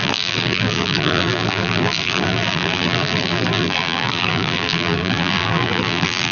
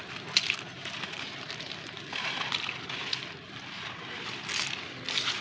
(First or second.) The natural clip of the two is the second